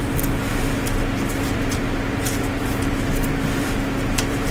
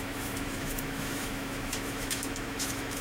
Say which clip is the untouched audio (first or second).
first